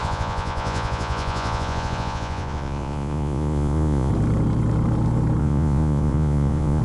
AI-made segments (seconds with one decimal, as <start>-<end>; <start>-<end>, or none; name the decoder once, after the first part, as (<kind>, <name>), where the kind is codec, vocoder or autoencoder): 0.0-4.1 (vocoder, Vocos); 5.4-6.8